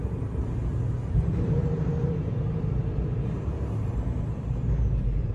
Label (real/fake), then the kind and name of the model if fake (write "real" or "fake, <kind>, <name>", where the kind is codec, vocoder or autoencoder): fake, vocoder, BigVGAN v2